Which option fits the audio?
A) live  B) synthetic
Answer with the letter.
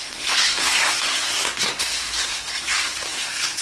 B